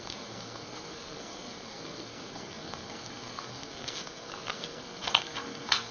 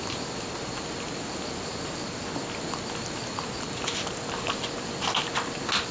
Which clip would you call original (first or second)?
second